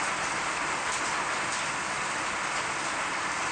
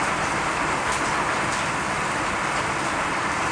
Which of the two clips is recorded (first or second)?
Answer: first